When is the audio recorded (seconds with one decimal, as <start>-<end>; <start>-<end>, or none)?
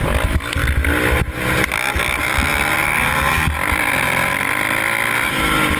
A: 0.0-5.8